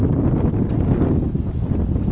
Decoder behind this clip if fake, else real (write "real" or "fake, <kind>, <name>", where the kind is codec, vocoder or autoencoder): real